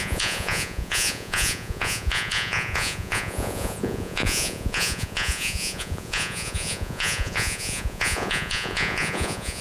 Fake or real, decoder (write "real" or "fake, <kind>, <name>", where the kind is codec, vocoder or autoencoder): fake, vocoder, Vocos